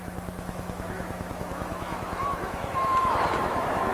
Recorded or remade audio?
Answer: remade